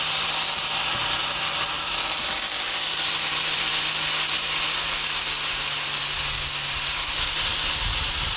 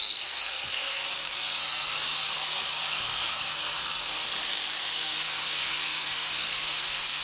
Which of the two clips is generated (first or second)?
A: second